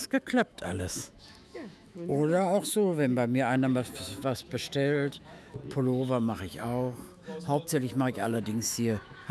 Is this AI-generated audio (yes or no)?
yes